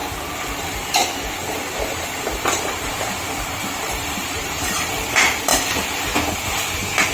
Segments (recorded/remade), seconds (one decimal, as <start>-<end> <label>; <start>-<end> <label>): 0.0-0.9 remade; 0.9-1.4 recorded; 1.4-4.9 remade; 4.9-7.1 recorded